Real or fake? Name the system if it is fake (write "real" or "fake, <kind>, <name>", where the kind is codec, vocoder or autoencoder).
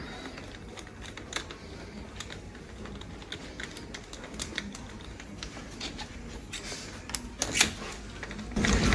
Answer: real